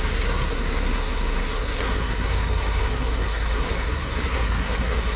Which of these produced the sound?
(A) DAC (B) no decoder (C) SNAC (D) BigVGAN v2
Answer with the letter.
C